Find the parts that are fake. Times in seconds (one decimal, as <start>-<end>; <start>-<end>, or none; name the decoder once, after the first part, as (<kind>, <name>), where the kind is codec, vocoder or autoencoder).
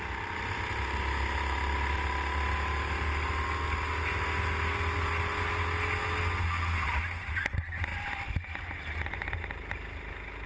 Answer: none